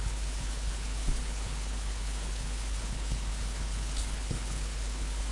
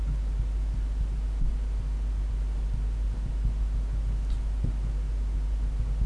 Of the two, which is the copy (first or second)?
first